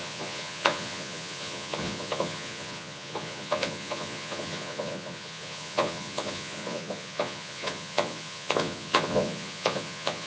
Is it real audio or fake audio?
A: fake